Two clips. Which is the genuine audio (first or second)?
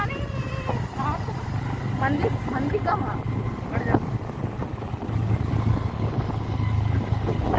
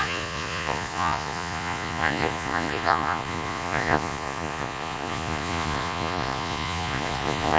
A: first